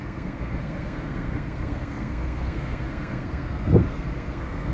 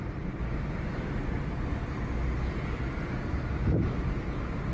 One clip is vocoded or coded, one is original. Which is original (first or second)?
second